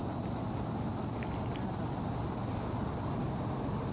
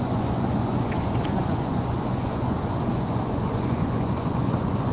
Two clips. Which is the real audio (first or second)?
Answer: first